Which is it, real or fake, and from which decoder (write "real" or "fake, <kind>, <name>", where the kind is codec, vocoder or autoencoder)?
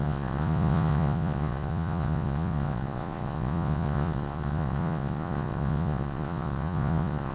fake, vocoder, Vocos